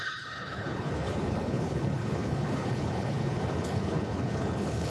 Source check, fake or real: fake